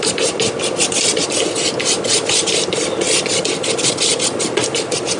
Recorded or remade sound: recorded